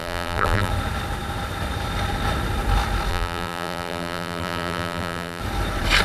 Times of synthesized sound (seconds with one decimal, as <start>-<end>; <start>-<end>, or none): 0.0-0.7; 3.1-5.4